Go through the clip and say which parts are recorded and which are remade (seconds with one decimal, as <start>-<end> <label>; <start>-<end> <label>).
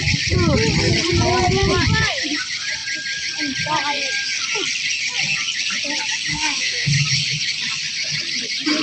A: 0.0-6.3 recorded; 6.3-6.9 remade; 6.9-8.8 recorded